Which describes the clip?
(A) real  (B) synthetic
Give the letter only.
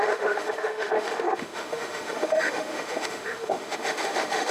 B